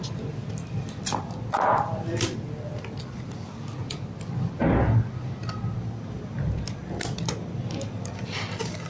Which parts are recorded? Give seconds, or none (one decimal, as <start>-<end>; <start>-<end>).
1.9-3.0; 3.8-7.9